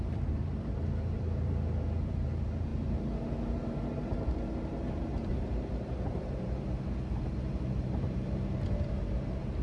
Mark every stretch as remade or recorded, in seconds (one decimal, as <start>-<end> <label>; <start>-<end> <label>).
0.0-9.6 remade